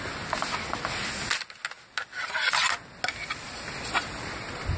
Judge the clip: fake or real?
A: real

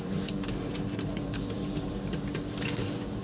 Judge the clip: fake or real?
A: fake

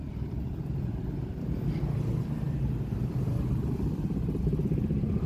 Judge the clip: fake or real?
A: fake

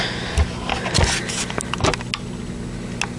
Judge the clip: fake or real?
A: real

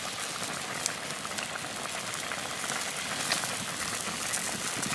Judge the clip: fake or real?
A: real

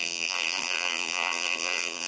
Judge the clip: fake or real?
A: fake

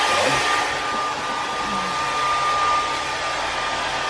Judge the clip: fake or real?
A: real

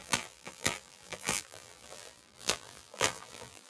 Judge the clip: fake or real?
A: fake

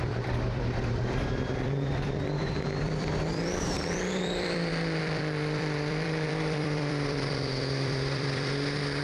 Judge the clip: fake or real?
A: fake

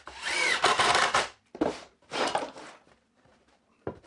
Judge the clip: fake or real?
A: fake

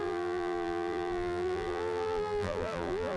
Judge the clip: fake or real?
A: fake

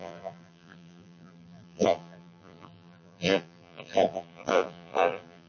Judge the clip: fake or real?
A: fake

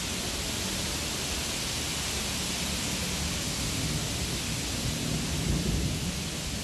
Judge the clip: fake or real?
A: real